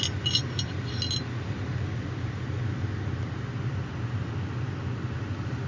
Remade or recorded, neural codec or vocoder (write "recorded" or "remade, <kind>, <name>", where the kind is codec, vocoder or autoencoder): recorded